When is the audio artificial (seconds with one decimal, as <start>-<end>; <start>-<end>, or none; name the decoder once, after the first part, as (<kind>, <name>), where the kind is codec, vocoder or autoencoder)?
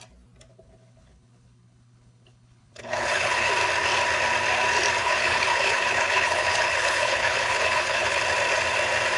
0.5-3.5 (codec, HILCodec); 5.0-8.2